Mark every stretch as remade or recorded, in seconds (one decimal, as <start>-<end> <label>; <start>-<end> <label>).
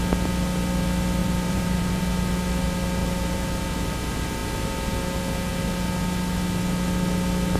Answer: 0.0-1.2 recorded; 1.2-2.0 remade; 2.0-3.0 recorded; 3.0-3.6 remade; 3.6-7.6 recorded